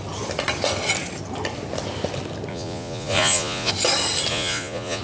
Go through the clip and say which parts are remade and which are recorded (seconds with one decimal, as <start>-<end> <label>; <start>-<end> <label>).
0.0-2.5 recorded; 2.5-3.7 remade; 3.7-4.3 recorded; 4.3-5.0 remade